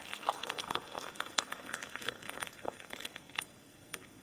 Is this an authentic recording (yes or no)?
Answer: no